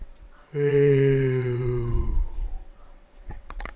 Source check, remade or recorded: remade